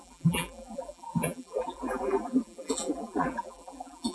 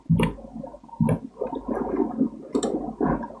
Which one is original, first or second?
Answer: second